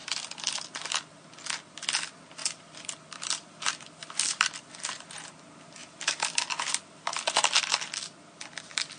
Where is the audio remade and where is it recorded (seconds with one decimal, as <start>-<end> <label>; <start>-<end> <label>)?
0.0-1.2 remade; 1.2-2.4 recorded; 2.4-5.1 remade; 5.1-5.8 recorded; 5.8-6.4 remade; 6.4-9.0 recorded